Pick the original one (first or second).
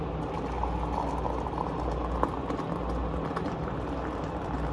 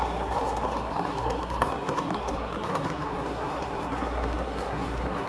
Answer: first